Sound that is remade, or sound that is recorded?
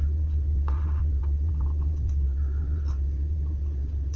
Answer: remade